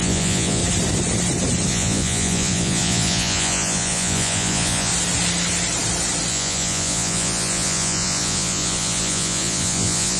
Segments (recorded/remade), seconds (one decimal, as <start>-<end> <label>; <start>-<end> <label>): 0.0-0.6 remade; 0.6-1.7 recorded; 1.7-4.9 remade; 4.9-6.3 recorded; 6.3-10.2 remade